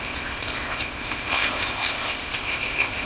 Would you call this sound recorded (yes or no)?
no